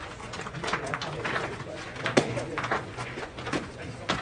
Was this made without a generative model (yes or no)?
no